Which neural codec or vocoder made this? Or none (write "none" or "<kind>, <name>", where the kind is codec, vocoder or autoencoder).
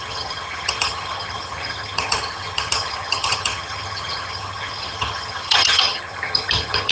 vocoder, HiFi-GAN